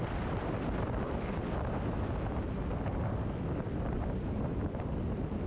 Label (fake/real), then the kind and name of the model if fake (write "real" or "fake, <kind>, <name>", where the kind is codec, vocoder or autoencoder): real